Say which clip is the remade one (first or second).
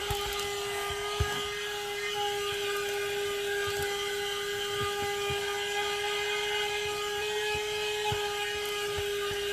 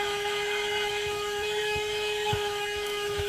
second